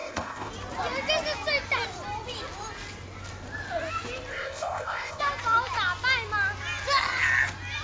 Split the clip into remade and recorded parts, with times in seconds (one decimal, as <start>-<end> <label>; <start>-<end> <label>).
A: 0.0-0.5 remade; 0.5-4.3 recorded; 4.3-5.2 remade; 5.2-7.8 recorded